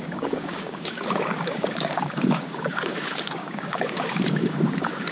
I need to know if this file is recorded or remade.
remade